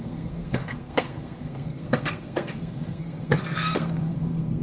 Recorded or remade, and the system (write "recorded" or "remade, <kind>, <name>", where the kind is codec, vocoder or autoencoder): remade, codec, SNAC